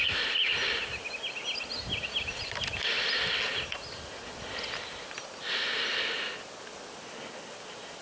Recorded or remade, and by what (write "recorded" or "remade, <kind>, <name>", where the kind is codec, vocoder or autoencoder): recorded